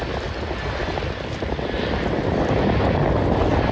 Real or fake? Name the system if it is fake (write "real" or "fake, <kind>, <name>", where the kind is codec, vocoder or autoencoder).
real